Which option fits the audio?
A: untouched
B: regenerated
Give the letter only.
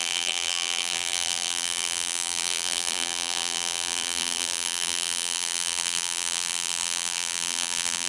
B